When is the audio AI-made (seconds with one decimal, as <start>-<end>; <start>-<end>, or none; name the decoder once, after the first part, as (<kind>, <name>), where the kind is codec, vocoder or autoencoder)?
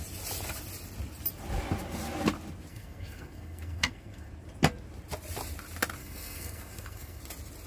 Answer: 2.7-4.3 (codec, SNAC); 6.0-7.2